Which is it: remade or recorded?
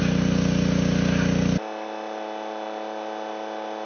recorded